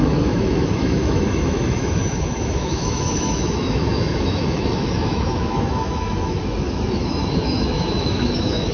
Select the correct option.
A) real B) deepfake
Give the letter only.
B